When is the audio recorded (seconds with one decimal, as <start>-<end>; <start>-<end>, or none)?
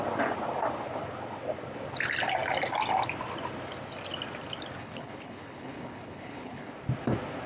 0.0-4.8; 6.7-7.5